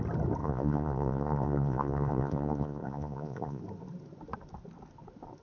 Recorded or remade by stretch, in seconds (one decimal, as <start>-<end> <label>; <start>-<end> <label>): 0.0-0.4 recorded; 0.4-3.6 remade; 3.6-5.4 recorded